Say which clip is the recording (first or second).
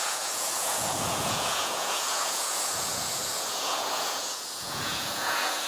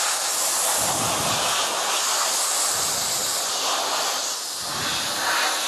second